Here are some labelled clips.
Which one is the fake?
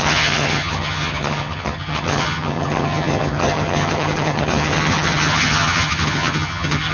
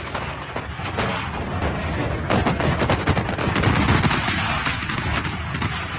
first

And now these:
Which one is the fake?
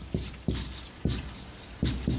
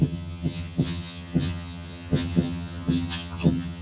second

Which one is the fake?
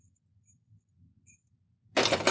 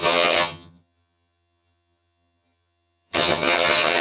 second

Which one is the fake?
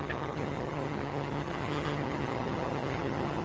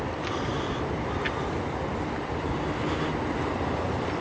first